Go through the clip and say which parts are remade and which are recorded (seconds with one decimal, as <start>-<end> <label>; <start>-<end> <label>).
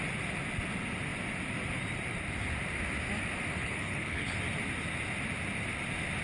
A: 0.0-3.6 recorded; 3.6-4.4 remade; 4.4-6.2 recorded